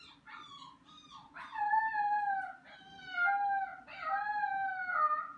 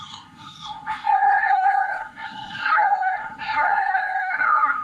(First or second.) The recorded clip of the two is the first